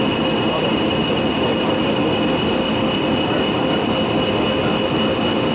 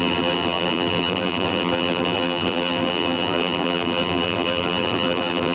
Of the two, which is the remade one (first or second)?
second